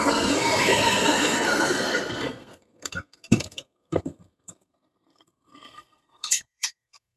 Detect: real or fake fake